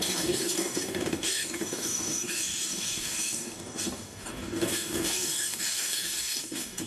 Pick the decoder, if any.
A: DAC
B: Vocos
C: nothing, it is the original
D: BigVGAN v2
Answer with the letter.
A